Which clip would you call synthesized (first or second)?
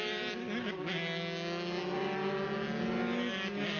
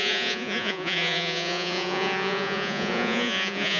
second